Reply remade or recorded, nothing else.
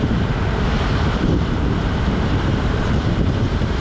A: remade